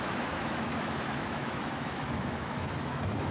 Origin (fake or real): fake